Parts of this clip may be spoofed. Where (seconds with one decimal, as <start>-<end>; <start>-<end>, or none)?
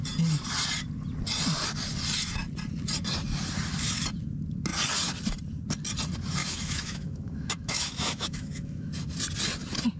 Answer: 6.4-8.9